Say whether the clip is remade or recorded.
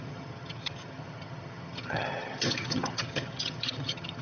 remade